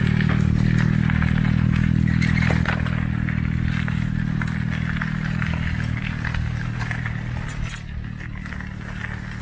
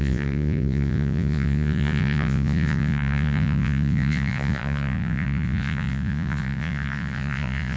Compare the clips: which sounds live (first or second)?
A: first